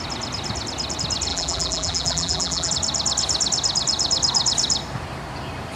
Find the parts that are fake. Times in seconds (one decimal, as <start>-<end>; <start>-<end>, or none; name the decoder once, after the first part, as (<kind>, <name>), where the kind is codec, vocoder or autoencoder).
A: 1.3-2.7 (vocoder, BigVGAN v2)

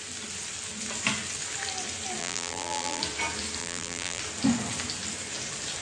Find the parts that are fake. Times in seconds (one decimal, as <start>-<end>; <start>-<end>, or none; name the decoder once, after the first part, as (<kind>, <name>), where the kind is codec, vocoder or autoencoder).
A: 2.2-3.0 (vocoder, BigVGAN v2); 3.6-4.2

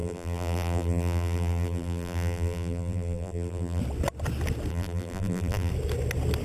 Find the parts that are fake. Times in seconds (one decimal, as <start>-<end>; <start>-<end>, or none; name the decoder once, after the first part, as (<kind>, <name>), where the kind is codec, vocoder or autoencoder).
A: 0.0-3.8 (vocoder, BigVGAN v2); 4.7-5.7

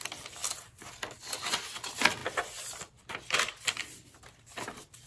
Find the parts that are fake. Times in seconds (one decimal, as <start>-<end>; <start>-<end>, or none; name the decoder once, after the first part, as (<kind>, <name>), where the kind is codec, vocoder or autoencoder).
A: 2.2-3.0 (vocoder, BigVGAN v2); 4.0-5.1

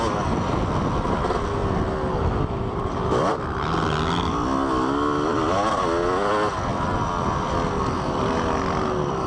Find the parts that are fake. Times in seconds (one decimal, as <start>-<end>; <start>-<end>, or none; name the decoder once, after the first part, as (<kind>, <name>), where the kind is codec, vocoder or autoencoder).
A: 6.7-8.2 (vocoder, BigVGAN v2)

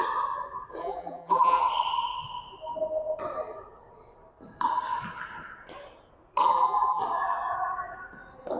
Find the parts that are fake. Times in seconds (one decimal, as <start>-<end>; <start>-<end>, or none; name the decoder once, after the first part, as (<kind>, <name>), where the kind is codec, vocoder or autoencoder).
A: 0.8-1.6 (vocoder, BigVGAN v2); 6.4-7.0

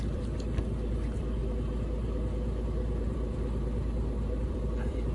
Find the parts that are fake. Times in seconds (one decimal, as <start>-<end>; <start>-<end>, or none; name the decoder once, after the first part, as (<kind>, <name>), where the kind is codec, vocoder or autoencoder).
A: 0.0-1.4 (vocoder, BigVGAN v2); 2.8-5.1

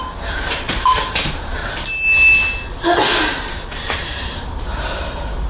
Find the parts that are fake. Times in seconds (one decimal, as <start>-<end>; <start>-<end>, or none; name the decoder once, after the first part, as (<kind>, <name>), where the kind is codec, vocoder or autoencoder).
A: 0.0-1.6 (vocoder, BigVGAN v2); 4.3-5.5